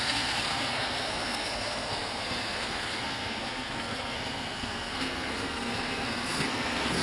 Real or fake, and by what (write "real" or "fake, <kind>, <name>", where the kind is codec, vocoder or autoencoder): fake, codec, SNAC